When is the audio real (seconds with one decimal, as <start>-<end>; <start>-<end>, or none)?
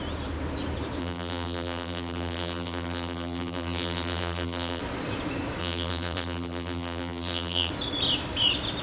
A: 0.0-1.0; 4.8-5.6; 7.7-8.8